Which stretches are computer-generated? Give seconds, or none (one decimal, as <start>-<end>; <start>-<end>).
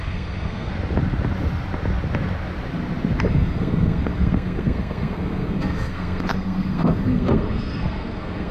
0.0-0.7; 3.3-8.5